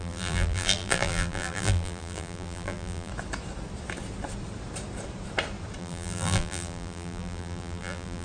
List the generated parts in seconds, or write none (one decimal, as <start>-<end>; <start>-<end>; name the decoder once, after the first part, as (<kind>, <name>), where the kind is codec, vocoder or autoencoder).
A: 0.0-3.1 (vocoder, BigVGAN v2); 5.8-8.2